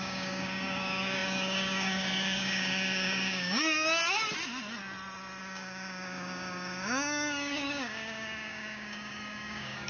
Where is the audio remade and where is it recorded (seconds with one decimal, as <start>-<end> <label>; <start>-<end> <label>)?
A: 0.0-4.0 remade; 4.0-5.4 recorded; 5.4-9.9 remade